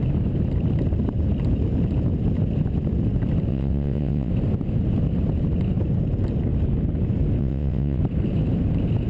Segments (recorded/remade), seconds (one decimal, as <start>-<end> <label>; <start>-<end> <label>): 0.0-3.5 recorded; 3.5-4.3 remade; 4.3-7.4 recorded; 7.4-8.0 remade; 8.0-9.1 recorded